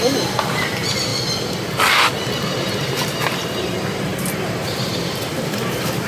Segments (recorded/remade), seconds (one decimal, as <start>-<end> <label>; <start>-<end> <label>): 0.0-1.1 remade; 1.1-2.6 recorded; 2.6-6.1 remade